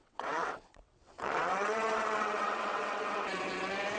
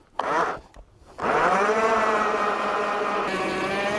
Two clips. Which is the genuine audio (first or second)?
second